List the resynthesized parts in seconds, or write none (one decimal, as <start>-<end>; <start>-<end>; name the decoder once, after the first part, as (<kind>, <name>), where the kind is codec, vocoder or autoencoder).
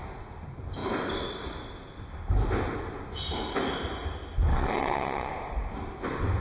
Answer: 4.5-5.3 (vocoder, WaveNeXt)